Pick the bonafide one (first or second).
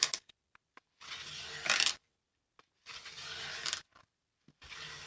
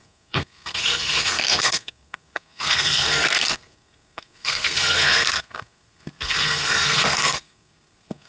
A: first